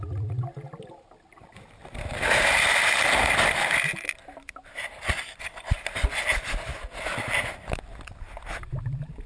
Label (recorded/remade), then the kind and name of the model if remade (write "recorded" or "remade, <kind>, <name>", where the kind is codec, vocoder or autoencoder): recorded